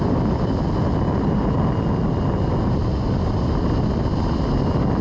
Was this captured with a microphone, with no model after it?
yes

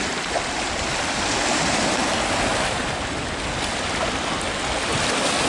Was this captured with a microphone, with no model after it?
yes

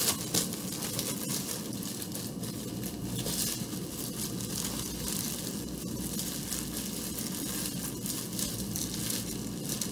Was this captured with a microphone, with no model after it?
yes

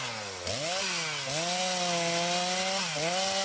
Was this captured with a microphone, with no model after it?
yes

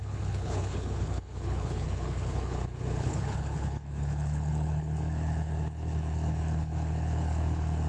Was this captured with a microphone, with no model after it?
no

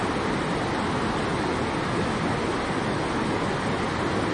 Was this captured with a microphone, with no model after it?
yes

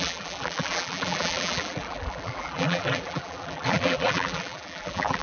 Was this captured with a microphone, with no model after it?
no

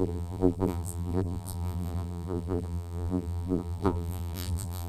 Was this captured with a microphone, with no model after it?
no